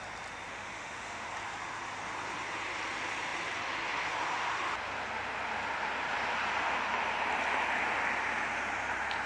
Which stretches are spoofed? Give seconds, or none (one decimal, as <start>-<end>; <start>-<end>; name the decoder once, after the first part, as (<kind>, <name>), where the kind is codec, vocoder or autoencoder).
0.5-1.3 (autoencoder, DAC-VAE)